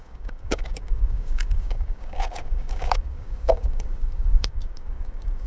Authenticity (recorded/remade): remade